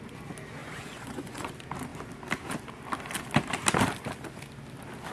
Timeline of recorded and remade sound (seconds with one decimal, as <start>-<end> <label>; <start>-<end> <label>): 0.0-0.6 recorded; 0.6-1.5 remade; 1.5-5.1 recorded